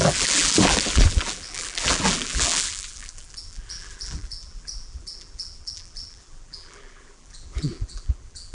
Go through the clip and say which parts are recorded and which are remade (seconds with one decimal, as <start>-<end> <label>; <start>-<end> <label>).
0.0-8.5 remade